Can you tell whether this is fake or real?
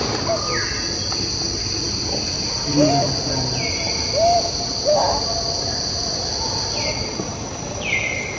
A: real